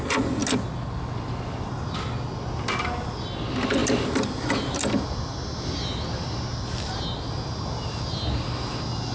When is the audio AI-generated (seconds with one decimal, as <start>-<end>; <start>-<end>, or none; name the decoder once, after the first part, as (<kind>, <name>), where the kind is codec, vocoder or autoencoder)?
none